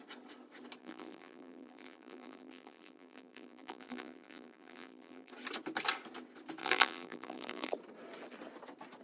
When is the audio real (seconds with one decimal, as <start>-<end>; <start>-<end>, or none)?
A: 0.0-0.8; 5.3-6.6; 7.7-9.0